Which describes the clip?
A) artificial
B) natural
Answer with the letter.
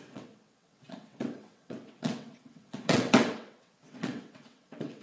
A